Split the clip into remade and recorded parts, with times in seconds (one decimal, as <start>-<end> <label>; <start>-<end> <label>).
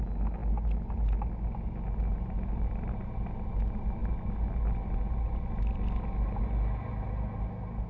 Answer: 0.0-7.9 recorded